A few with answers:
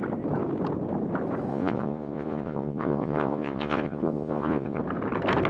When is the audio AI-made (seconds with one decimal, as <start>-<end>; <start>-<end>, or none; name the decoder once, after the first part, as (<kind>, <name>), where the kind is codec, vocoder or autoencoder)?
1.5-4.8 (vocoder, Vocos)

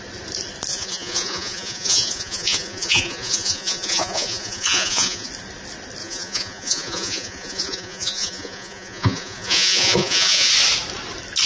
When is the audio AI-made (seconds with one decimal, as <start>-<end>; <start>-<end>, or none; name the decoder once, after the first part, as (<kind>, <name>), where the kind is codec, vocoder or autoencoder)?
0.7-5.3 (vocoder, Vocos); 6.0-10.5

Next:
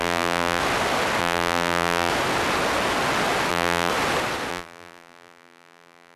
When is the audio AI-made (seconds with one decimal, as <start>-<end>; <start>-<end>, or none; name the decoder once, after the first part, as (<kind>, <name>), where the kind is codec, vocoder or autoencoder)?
0.0-0.6 (vocoder, BigVGAN v2); 1.2-2.1; 3.5-3.9; 4.5-6.2

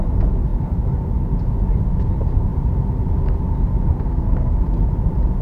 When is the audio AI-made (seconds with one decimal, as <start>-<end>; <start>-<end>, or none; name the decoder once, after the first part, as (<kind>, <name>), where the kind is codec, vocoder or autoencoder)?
3.9-4.5 (codec, SNAC)

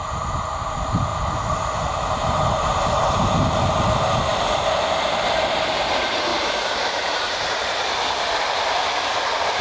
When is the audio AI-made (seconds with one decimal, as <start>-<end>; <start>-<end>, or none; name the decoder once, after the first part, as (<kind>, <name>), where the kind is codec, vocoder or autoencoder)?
6.3-9.6 (vocoder, BigVGAN v2)